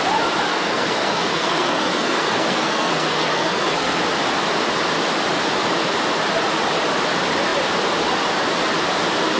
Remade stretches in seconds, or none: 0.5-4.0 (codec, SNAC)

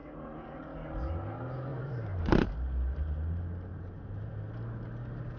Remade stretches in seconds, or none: 1.7-2.5 (vocoder, BigVGAN v2); 3.7-4.3

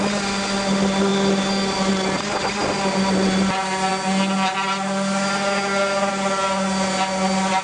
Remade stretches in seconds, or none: none

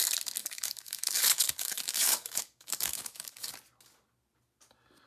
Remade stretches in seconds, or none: 0.4-3.5 (codec, DAC)

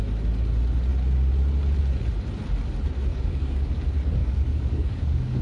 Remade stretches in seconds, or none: 3.1-3.8 (codec, DAC); 4.2-5.4

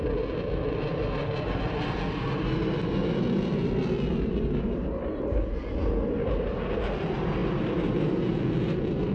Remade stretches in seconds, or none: none

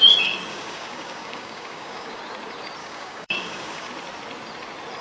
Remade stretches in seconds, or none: 0.5-2.2 (codec, DAC); 2.8-3.9

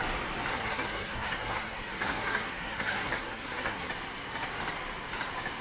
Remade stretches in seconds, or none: 0.5-3.9 (codec, SNAC)